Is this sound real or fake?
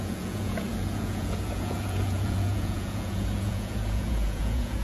fake